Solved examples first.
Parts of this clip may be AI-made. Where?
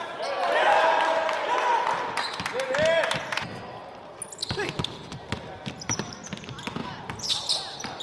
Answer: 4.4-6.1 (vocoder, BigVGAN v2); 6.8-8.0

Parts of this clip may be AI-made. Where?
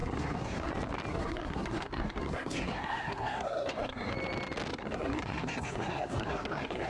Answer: 0.0-0.7 (codec, SNAC); 1.1-4.1; 4.7-6.9